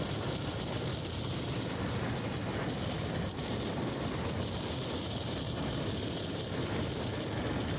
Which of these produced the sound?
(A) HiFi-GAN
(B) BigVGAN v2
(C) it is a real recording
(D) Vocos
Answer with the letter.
C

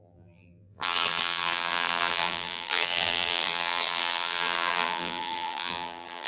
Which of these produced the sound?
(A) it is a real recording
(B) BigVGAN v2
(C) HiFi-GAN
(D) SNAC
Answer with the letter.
B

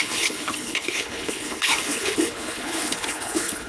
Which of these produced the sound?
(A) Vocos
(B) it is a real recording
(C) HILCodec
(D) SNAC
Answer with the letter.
C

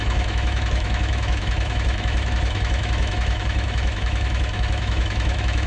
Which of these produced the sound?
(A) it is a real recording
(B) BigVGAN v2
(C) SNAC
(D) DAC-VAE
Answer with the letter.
D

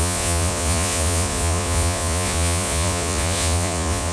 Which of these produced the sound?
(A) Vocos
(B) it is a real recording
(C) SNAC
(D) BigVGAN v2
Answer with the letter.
A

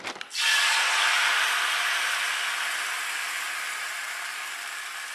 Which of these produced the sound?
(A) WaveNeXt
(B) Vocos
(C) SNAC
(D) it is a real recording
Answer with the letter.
D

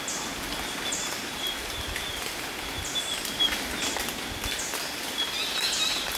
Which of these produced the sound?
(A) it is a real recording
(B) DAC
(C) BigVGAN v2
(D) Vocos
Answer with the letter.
A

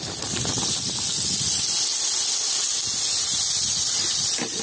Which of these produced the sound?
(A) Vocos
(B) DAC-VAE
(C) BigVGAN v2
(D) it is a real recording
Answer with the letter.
D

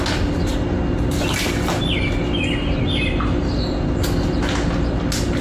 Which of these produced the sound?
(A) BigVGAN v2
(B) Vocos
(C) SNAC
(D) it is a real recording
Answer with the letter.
D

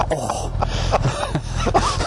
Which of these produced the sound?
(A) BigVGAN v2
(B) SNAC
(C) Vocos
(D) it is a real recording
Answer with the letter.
D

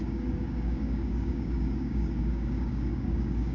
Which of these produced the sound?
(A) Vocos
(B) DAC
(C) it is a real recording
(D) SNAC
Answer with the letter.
B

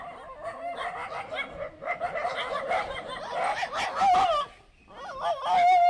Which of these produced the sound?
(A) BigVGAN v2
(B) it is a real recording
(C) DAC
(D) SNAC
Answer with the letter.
B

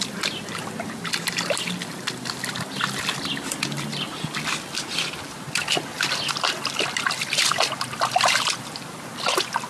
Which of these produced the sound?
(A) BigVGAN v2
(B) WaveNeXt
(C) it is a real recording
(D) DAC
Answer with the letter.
C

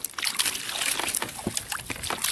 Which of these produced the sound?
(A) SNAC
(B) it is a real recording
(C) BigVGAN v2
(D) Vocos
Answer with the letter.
B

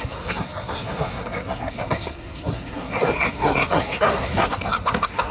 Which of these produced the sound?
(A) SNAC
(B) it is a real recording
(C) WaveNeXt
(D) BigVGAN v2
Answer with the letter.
A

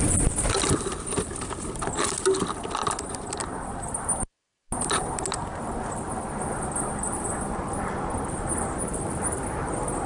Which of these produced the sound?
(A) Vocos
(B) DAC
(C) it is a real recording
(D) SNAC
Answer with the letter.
C